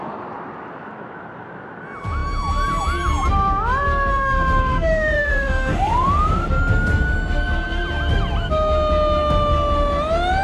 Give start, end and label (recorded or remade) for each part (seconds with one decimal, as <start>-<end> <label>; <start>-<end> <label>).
0.0-4.1 recorded; 4.1-5.9 remade; 5.9-10.4 recorded